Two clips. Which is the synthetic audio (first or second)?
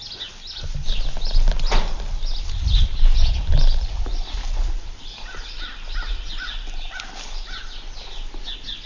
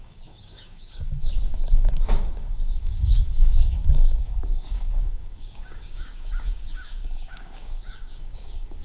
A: second